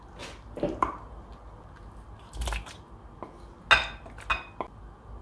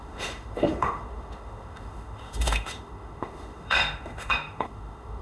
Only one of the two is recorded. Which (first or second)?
first